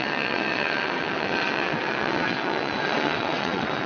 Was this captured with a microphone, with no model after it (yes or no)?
no